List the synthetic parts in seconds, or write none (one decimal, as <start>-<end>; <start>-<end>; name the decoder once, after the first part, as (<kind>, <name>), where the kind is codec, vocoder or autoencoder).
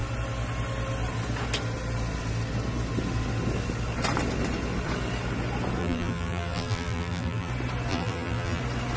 5.8-7.5 (vocoder, BigVGAN v2); 7.9-8.6